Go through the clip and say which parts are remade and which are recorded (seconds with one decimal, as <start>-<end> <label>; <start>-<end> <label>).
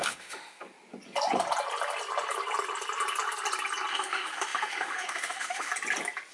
0.0-0.6 remade; 0.6-3.9 recorded; 3.9-5.7 remade; 5.7-6.3 recorded